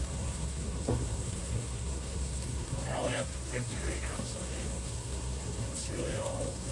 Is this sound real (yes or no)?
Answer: no